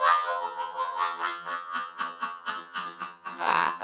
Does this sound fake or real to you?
fake